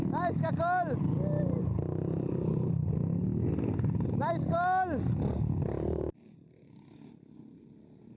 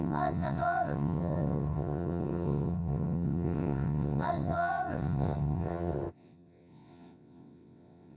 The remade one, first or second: second